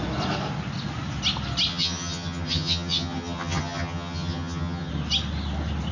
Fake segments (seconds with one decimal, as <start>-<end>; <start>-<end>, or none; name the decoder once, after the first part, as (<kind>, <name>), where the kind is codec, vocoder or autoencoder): 1.7-4.9 (vocoder, HiFi-GAN)